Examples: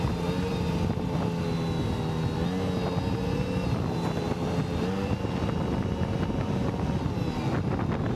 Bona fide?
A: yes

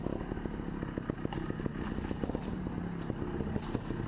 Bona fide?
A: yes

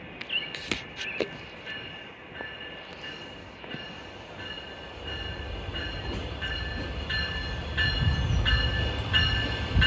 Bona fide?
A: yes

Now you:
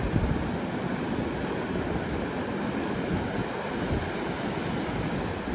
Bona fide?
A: yes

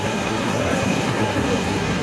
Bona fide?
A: no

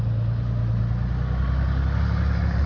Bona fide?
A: yes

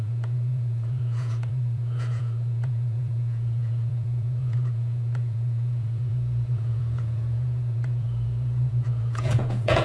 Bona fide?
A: no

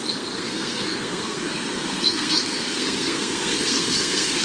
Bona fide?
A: no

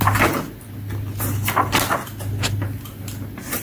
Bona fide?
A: yes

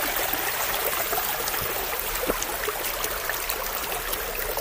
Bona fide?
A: yes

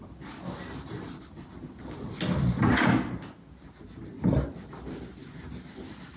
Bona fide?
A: yes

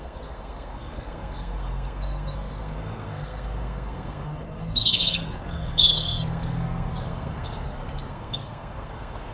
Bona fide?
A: no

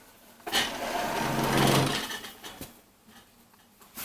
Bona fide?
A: yes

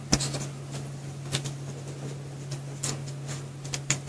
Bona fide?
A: yes